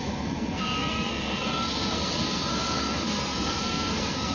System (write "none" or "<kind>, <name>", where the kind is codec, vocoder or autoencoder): codec, SNAC